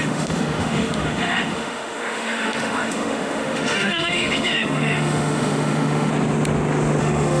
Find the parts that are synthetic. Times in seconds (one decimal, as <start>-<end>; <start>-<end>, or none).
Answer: 0.0-6.1; 7.0-7.4